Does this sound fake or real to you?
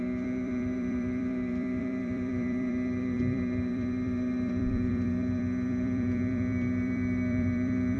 fake